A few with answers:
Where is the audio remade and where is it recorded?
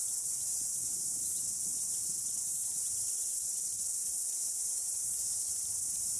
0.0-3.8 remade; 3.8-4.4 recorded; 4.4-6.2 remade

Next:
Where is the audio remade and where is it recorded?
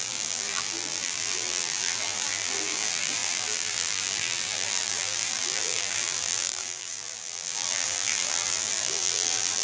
0.0-9.6 remade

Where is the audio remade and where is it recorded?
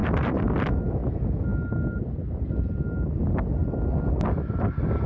0.0-1.0 remade; 1.0-5.1 recorded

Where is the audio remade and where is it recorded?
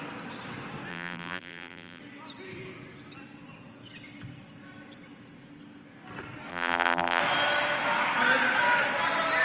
0.0-0.9 recorded; 0.9-2.0 remade; 2.0-6.5 recorded; 6.5-7.2 remade; 7.2-9.4 recorded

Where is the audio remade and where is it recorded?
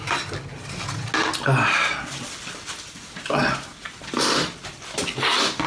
0.0-5.7 recorded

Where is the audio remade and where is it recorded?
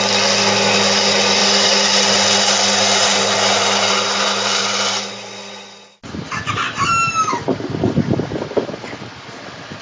0.0-9.8 recorded